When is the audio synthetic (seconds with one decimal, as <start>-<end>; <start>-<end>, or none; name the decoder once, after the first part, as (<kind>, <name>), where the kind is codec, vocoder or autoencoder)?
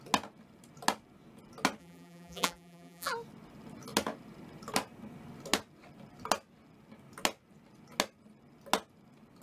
1.8-3.1 (vocoder, BigVGAN v2)